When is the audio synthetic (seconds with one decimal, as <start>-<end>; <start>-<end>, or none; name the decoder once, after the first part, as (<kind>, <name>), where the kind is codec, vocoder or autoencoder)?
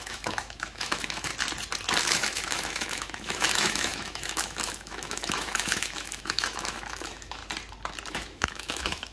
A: 0.0-1.3 (autoencoder, DAC-VAE); 2.0-7.4; 8.1-9.1